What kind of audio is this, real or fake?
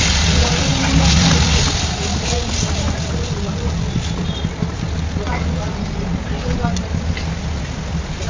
real